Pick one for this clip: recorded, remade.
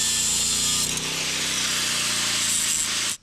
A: recorded